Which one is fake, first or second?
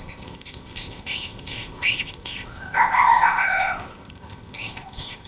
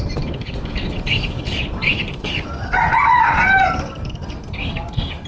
first